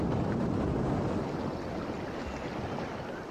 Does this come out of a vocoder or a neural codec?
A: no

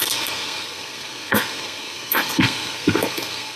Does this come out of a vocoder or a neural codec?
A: yes